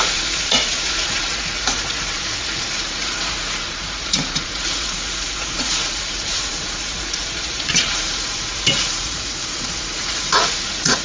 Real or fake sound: fake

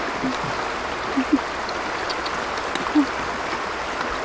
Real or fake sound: real